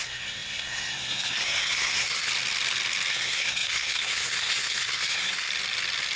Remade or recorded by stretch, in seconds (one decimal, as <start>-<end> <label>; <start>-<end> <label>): 0.0-2.3 remade; 2.3-3.1 recorded; 3.1-5.5 remade; 5.5-6.2 recorded